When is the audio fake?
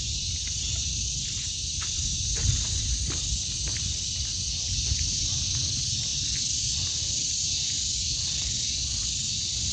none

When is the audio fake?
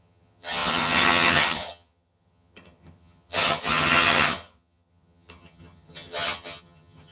0.0-7.1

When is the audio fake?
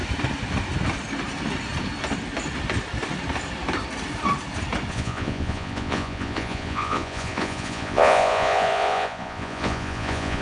4.9-10.4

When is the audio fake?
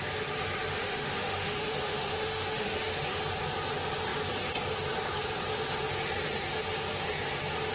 0.7-3.2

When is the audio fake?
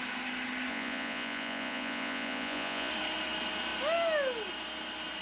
0.7-2.9